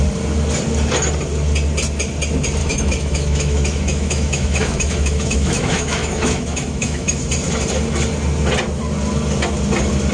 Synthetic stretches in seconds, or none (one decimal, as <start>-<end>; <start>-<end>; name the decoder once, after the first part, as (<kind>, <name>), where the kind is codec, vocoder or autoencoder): 2.6-7.2 (autoencoder, DAC-VAE)